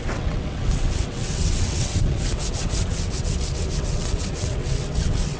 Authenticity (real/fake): fake